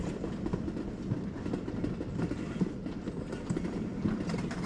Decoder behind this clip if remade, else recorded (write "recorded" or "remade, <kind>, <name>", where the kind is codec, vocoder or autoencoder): recorded